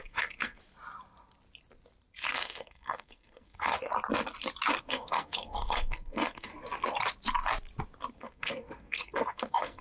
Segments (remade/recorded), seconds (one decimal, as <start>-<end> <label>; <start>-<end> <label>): 0.0-0.6 remade; 0.6-2.3 recorded; 2.3-3.9 remade; 3.9-4.8 recorded; 4.8-6.5 remade; 6.5-8.1 recorded; 8.1-9.8 remade